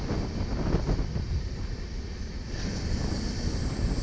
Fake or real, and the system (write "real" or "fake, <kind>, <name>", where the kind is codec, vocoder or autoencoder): real